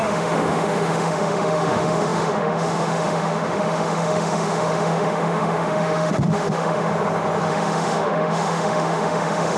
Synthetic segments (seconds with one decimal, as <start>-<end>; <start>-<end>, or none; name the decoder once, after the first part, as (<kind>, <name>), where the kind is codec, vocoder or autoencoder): 0.0-6.9 (autoencoder, DAC-VAE); 7.5-9.6